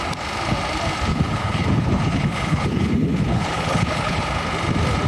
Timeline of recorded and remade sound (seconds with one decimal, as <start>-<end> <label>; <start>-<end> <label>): 0.0-1.1 recorded; 1.1-4.2 remade; 4.2-5.1 recorded